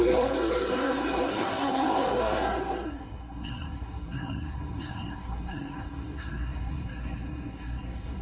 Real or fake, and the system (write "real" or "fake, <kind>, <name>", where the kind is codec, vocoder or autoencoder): fake, codec, SNAC